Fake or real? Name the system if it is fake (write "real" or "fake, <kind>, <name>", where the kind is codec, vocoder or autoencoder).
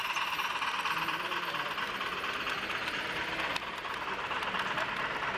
real